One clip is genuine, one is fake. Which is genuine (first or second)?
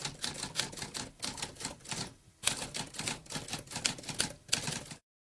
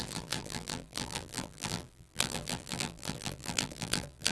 first